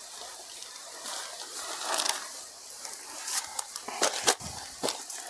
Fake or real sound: real